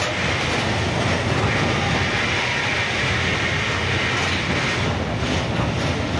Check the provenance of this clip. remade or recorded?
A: recorded